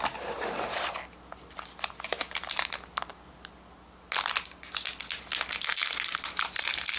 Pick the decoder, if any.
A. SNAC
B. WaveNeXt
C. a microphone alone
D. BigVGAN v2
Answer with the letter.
C